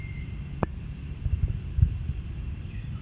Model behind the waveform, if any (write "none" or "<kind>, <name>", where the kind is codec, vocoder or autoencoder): none